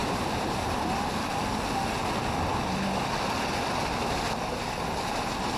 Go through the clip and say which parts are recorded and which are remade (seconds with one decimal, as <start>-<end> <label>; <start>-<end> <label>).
0.0-2.0 remade; 2.0-5.6 recorded